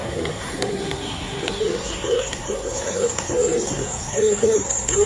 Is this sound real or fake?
fake